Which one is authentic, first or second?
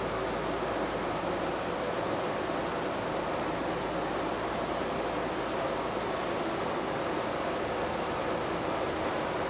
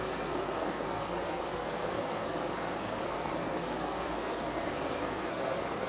first